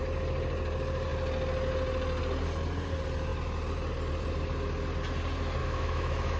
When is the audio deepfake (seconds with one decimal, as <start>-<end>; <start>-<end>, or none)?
5.6-6.4